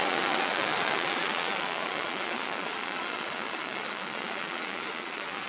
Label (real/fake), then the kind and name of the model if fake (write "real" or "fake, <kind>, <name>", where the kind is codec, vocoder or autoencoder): fake, vocoder, Vocos